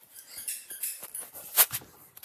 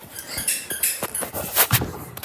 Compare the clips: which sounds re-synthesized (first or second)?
first